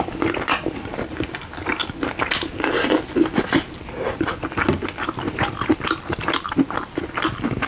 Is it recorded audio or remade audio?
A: recorded